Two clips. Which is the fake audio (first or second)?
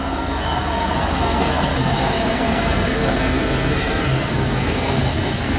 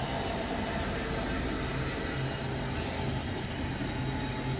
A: first